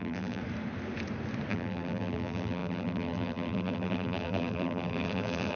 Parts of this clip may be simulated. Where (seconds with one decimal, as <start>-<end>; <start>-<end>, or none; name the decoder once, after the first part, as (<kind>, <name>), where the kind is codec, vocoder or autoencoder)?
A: 0.0-0.4 (vocoder, BigVGAN v2); 1.5-5.5